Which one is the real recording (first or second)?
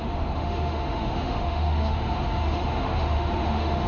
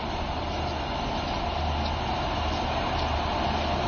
second